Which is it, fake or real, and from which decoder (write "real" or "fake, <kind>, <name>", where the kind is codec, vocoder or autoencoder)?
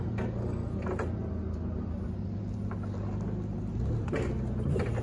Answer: real